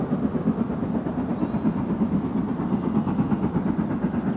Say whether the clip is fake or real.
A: real